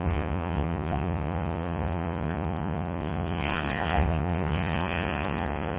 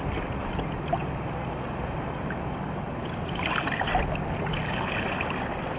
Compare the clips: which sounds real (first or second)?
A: second